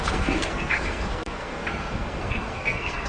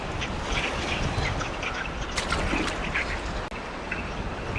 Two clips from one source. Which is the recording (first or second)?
second